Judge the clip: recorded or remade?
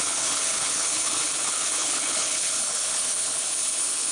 remade